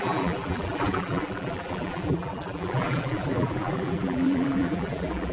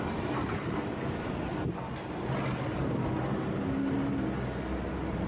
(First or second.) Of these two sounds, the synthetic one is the first